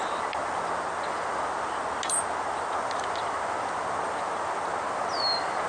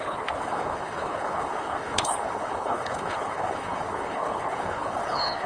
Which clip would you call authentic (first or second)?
first